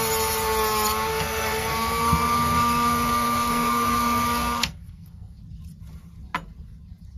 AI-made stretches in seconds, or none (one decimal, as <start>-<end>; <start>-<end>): 1.1-5.4